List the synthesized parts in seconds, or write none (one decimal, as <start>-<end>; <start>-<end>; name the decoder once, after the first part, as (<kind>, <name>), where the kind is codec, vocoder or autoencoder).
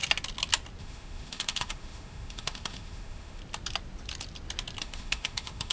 0.8-3.4 (autoencoder, DAC-VAE); 4.8-5.7